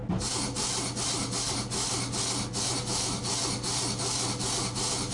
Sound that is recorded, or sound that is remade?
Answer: recorded